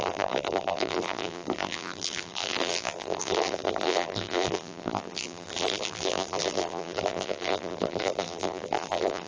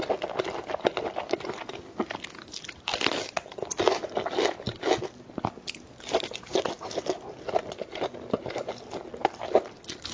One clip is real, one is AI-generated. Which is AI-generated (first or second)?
first